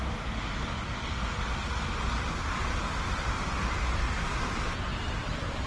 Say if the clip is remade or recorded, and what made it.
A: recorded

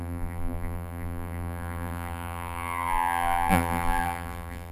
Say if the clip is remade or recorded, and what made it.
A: remade, vocoder, BigVGAN v2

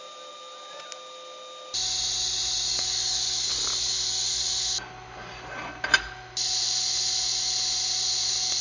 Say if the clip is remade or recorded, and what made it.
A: recorded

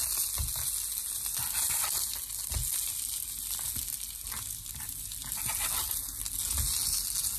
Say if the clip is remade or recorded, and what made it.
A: recorded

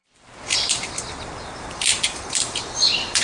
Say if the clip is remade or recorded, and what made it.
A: remade, vocoder, BigVGAN v2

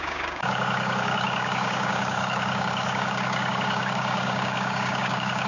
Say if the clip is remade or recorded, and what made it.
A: remade, codec, DAC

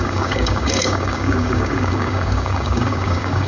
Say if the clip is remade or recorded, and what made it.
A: remade, codec, DAC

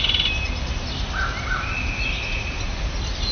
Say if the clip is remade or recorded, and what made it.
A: recorded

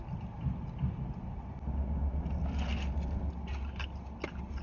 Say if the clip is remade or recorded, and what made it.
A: recorded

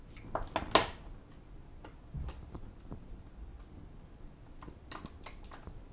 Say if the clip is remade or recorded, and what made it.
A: recorded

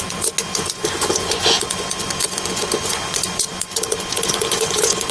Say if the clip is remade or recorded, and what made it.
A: remade, vocoder, Vocos